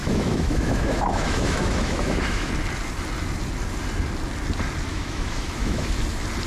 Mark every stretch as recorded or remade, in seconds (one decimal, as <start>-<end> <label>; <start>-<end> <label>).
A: 0.0-2.5 remade; 2.5-4.9 recorded; 4.9-5.9 remade; 5.9-6.5 recorded